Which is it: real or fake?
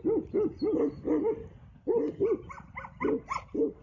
real